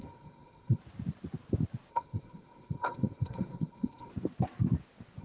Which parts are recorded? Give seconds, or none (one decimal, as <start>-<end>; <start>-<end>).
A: 0.8-1.9; 4.1-5.2